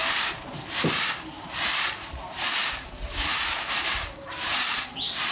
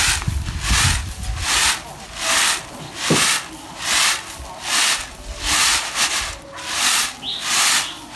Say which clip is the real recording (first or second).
second